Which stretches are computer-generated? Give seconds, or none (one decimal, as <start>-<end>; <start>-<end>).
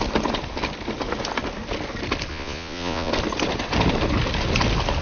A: 2.3-3.1